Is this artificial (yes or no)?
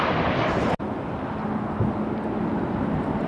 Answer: no